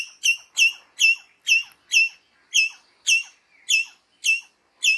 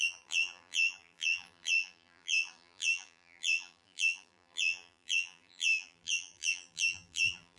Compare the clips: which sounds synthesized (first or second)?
second